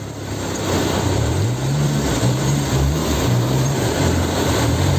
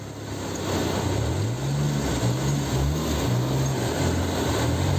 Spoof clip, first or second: first